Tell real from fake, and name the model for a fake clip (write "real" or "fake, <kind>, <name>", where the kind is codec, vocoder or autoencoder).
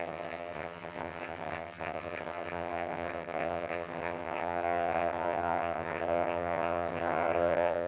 fake, vocoder, HiFi-GAN